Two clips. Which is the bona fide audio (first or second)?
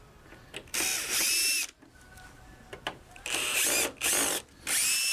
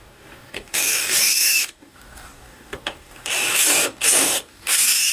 first